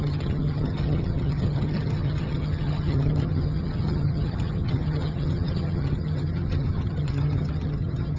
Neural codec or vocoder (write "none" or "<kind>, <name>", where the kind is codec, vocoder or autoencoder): vocoder, HiFi-GAN